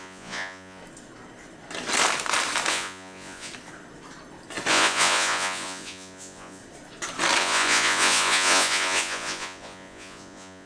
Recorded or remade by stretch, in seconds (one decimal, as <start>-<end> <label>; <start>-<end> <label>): 0.0-0.8 remade; 0.8-2.7 recorded; 2.7-3.5 remade; 3.5-4.7 recorded; 4.7-6.6 remade; 6.6-7.4 recorded; 7.4-10.7 remade

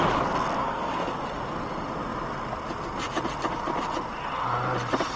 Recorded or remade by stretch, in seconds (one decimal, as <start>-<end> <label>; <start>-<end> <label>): 0.0-0.6 recorded; 0.6-1.1 remade; 1.1-5.2 recorded

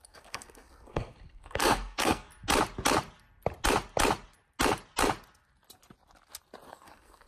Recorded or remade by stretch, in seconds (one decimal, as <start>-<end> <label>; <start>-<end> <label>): 0.0-2.3 remade; 2.3-6.7 recorded; 6.7-7.3 remade

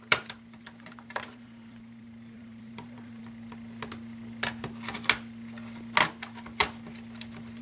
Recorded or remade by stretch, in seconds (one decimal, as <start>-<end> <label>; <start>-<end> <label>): 0.0-3.2 remade; 3.2-7.6 recorded

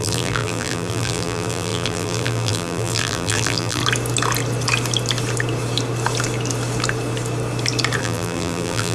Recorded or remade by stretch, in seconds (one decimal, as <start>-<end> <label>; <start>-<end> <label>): 0.0-3.8 remade; 3.8-8.0 recorded; 8.0-8.9 remade

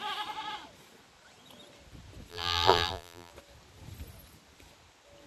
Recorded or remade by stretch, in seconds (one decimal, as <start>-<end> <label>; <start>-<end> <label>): 0.0-2.3 recorded; 2.3-3.3 remade; 3.3-5.3 recorded

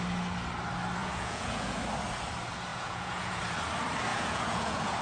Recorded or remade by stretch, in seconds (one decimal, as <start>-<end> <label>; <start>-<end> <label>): 0.0-1.0 recorded; 1.0-1.8 remade; 1.8-2.7 recorded; 2.7-3.4 remade; 3.4-4.1 recorded; 4.1-5.0 remade